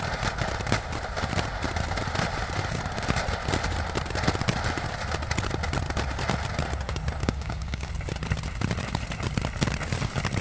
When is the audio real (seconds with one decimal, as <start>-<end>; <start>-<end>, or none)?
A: 0.0-7.2; 7.9-10.4